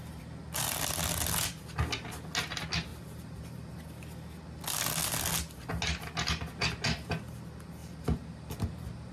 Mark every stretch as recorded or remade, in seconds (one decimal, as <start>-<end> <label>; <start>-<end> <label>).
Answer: 0.0-2.9 recorded; 2.9-3.7 remade; 3.7-7.8 recorded; 7.8-9.1 remade